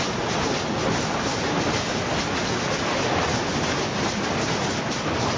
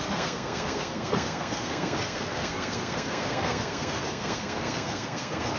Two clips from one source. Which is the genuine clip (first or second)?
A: first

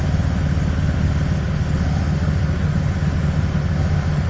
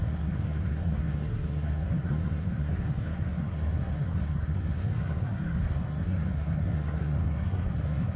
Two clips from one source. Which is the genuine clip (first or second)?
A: first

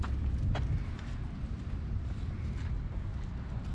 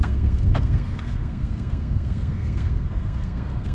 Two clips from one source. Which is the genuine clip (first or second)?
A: first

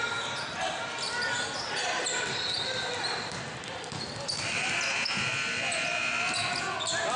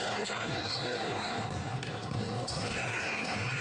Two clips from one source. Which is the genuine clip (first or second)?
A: first